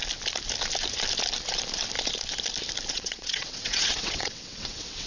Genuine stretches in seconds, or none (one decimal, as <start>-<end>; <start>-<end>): 0.0-2.9